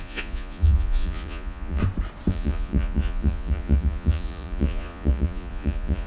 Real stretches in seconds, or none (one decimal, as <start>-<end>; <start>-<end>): 1.8-2.3